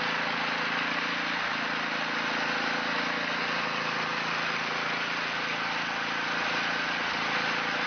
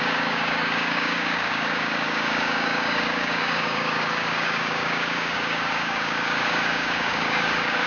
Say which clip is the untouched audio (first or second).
first